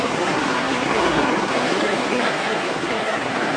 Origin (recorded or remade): remade